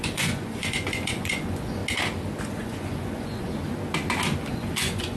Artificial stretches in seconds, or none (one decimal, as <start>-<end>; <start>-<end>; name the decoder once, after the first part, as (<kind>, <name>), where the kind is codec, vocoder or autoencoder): 0.0-1.8 (vocoder, Vocos); 2.4-3.5; 4.5-5.2